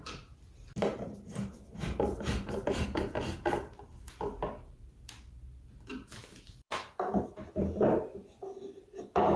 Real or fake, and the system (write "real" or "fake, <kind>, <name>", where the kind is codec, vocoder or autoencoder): fake, vocoder, BigVGAN v2